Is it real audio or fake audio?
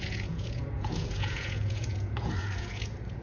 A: fake